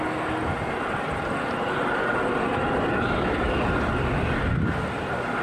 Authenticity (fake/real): real